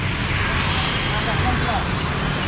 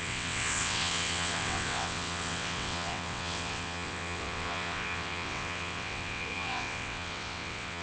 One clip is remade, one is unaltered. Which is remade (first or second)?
second